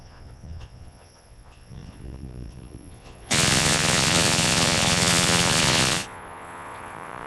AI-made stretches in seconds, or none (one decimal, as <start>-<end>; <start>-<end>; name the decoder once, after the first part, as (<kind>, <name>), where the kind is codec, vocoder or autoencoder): 0.0-7.3 (vocoder, Vocos)